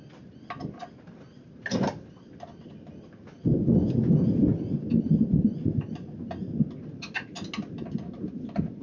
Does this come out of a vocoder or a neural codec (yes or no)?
no